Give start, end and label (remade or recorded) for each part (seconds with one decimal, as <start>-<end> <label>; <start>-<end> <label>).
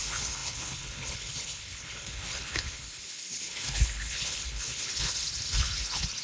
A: 0.0-6.2 remade